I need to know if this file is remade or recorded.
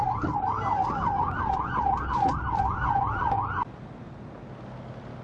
recorded